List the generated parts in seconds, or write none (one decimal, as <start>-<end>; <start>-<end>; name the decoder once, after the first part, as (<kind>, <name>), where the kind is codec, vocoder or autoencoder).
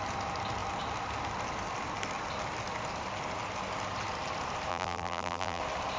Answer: 4.7-5.6 (vocoder, BigVGAN v2)